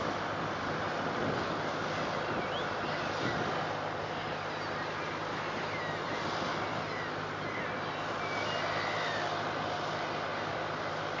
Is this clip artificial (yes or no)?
no